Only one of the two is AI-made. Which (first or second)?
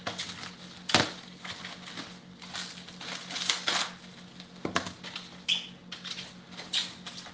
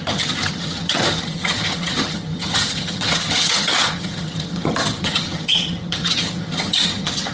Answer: second